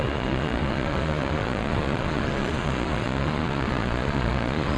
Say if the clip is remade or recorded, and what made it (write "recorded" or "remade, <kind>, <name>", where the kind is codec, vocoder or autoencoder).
remade, vocoder, Vocos